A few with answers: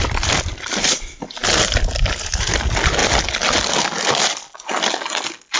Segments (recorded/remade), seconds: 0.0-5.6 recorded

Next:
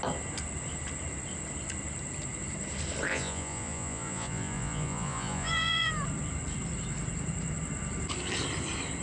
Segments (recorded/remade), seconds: 0.0-3.1 recorded; 3.1-5.9 remade; 5.9-9.0 recorded

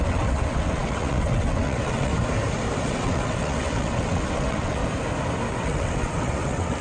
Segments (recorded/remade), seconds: 0.0-2.1 remade; 2.1-2.8 recorded; 2.8-4.8 remade; 4.8-5.5 recorded; 5.5-6.8 remade

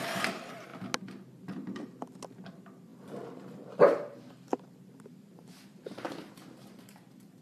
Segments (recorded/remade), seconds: 0.0-2.9 recorded; 2.9-7.4 remade

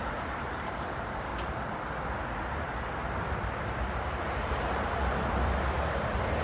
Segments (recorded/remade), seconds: 0.0-1.3 remade; 1.3-3.6 recorded; 3.6-6.4 remade

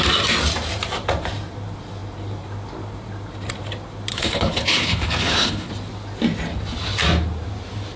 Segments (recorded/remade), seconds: 0.0-4.1 recorded; 4.1-5.7 remade; 5.7-8.0 recorded

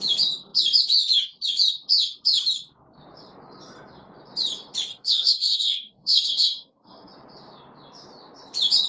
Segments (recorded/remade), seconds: 0.0-4.9 recorded; 4.9-7.1 remade; 7.1-8.9 recorded

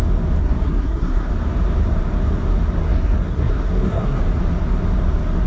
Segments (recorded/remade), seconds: 0.0-0.4 recorded; 0.4-1.3 remade; 1.3-2.8 recorded; 2.8-4.2 remade; 4.2-5.5 recorded